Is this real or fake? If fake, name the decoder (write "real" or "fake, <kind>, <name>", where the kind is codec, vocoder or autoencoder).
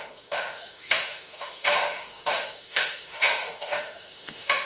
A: fake, autoencoder, DAC-VAE